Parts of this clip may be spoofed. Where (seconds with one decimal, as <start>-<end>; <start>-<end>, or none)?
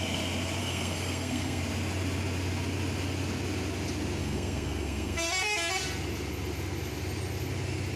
0.6-1.6; 4.2-5.4